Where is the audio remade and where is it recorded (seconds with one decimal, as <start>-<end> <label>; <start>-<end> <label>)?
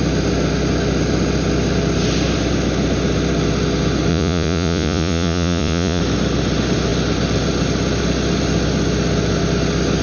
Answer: 0.0-4.1 recorded; 4.1-6.0 remade; 6.0-10.0 recorded